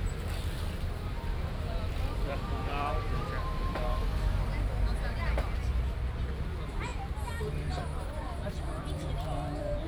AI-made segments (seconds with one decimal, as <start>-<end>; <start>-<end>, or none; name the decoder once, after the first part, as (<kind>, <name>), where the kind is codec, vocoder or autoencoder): 0.0-6.9 (vocoder, BigVGAN v2); 8.2-9.9

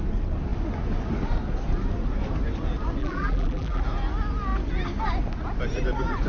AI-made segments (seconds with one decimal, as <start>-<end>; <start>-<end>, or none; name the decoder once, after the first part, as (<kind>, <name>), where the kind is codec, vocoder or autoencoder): 3.0-3.8 (vocoder, BigVGAN v2)

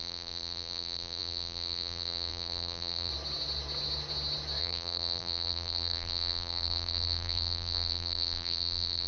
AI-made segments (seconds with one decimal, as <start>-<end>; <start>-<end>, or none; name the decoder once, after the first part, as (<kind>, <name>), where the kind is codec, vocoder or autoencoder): 0.0-3.1 (vocoder, BigVGAN v2); 4.6-9.1

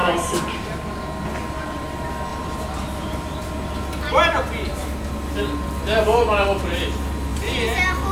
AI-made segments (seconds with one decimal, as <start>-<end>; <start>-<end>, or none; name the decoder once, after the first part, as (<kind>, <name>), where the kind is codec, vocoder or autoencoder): 0.0-1.0 (vocoder, BigVGAN v2); 2.3-3.8

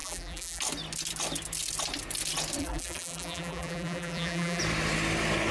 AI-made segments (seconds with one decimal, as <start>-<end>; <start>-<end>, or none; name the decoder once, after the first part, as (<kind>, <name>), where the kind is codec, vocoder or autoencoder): 0.0-0.6 (vocoder, BigVGAN v2); 2.6-4.6

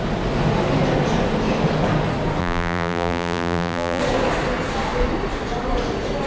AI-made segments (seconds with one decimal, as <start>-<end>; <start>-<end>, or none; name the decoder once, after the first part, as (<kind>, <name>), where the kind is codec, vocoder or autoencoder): 2.4-4.0 (vocoder, BigVGAN v2)

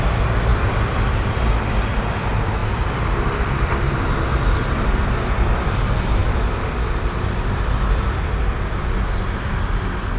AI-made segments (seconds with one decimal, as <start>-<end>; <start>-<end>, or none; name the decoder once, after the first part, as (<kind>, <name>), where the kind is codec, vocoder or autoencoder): 0.0-10.2 (vocoder, BigVGAN v2)